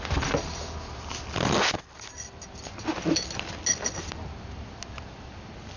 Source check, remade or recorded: recorded